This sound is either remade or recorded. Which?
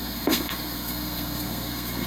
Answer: remade